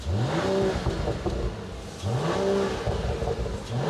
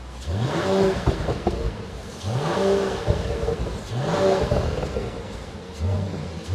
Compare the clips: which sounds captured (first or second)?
first